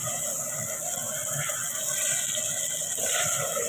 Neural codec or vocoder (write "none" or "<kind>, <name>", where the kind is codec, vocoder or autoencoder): none